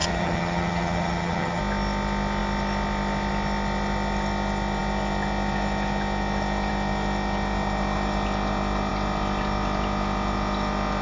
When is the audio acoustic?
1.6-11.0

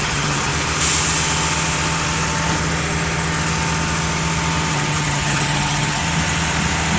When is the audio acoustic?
0.5-4.7; 6.0-7.0

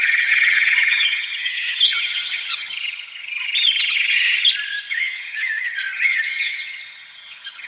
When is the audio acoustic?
4.5-4.9

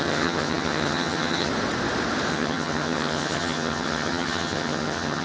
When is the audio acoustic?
1.5-2.3